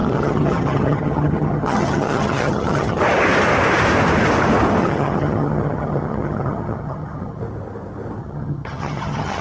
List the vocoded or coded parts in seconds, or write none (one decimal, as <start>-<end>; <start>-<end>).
0.0-3.0; 4.8-7.4; 8.2-9.4